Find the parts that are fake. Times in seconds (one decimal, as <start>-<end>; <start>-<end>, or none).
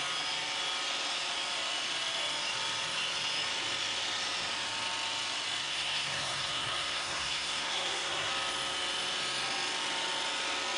5.6-8.3